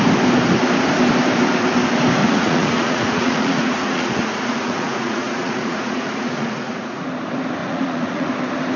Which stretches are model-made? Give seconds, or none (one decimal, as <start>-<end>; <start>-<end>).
2.2-7.1; 7.6-8.3